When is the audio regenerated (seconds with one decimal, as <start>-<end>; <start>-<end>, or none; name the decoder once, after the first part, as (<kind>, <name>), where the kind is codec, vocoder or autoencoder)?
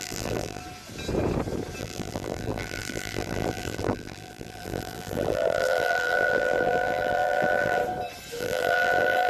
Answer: 0.0-0.6 (vocoder, BigVGAN v2); 1.8-7.8; 8.4-9.3